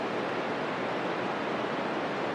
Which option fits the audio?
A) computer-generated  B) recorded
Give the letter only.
B